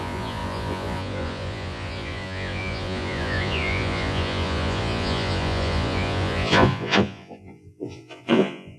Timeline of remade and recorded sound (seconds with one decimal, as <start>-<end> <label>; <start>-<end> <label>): 0.0-8.8 remade